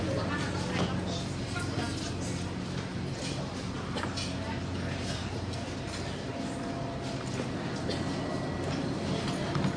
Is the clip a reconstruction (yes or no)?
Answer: no